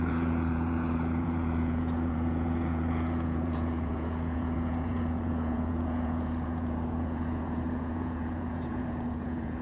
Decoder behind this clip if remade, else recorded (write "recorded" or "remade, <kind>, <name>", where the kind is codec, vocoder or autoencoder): remade, vocoder, Vocos